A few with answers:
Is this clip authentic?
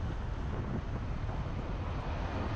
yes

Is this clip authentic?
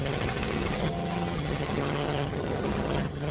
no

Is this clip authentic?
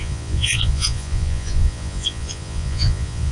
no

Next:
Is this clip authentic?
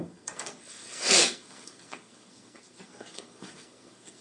no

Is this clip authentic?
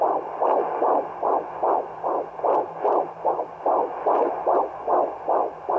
yes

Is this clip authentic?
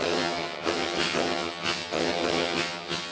no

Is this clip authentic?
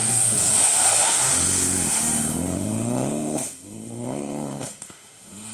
no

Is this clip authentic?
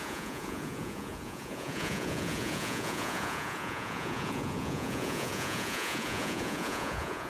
no